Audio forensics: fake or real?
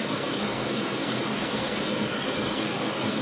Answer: fake